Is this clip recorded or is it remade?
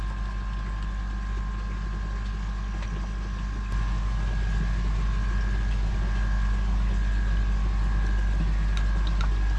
recorded